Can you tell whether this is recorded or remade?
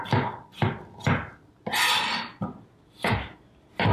recorded